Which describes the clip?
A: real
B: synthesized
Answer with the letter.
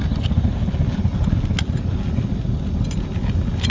A